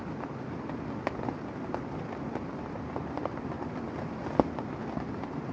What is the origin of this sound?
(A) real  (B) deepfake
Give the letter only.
A